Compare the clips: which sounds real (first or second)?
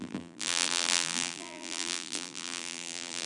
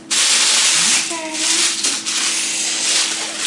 second